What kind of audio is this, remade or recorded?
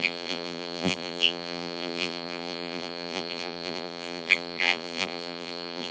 remade